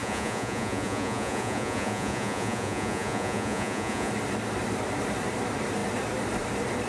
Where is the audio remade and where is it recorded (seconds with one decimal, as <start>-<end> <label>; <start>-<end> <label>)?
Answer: 0.0-4.1 remade; 4.1-6.9 recorded